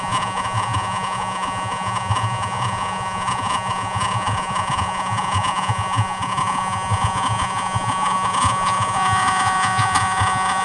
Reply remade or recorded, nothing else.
remade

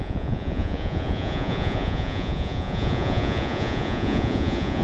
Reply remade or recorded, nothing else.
remade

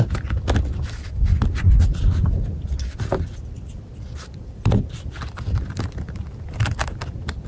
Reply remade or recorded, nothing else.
recorded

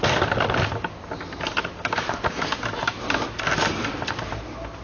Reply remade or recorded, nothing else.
recorded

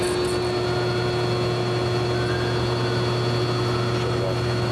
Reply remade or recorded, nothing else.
recorded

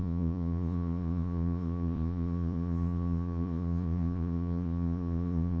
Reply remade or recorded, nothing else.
remade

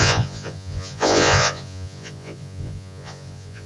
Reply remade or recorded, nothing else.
remade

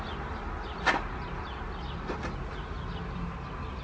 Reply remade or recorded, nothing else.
recorded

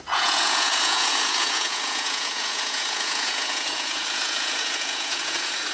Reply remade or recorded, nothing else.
remade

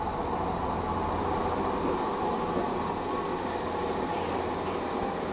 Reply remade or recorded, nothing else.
recorded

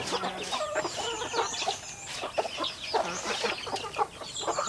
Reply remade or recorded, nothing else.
recorded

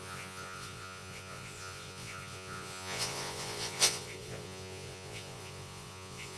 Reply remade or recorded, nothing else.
remade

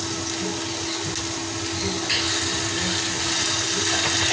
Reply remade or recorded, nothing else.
recorded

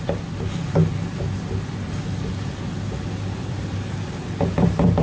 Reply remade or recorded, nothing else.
recorded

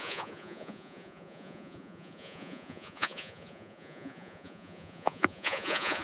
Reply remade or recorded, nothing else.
remade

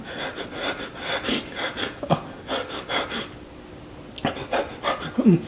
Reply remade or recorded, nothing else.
recorded